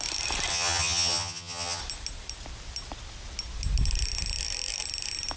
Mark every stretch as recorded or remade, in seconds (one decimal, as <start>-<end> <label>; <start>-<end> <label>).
0.0-0.5 recorded; 0.5-1.8 remade; 1.8-5.4 recorded